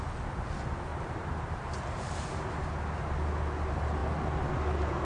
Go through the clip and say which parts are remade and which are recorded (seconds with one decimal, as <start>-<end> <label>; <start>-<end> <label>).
0.0-0.9 recorded; 0.9-2.3 remade; 2.3-5.0 recorded